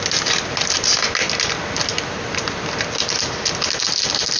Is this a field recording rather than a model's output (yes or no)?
yes